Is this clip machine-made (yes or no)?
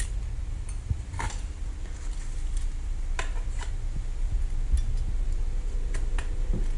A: no